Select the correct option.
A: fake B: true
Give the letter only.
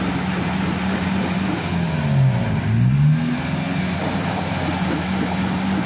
B